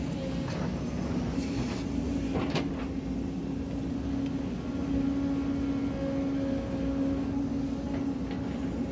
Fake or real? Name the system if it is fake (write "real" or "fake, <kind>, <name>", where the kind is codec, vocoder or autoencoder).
real